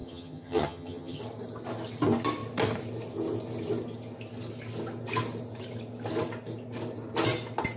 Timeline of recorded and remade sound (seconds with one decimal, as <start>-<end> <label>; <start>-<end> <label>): 0.0-1.2 remade; 1.2-7.8 recorded